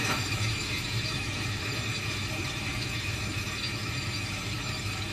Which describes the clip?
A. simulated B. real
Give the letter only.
A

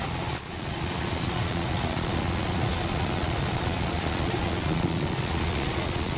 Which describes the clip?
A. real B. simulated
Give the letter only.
B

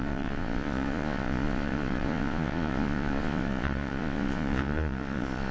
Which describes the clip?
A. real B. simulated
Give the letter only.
B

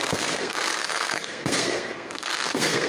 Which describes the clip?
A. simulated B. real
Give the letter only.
A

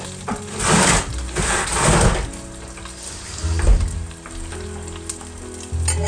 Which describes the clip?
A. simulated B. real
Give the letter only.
B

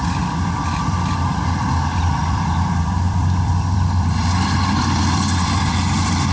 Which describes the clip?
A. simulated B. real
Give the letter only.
A